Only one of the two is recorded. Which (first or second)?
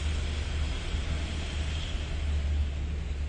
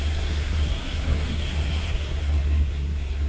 first